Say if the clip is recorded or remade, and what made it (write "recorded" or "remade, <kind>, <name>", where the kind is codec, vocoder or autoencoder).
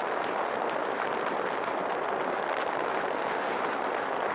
recorded